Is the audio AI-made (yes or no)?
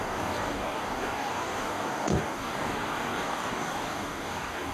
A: yes